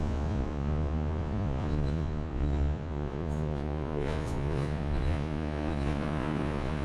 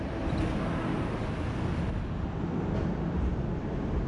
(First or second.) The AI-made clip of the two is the first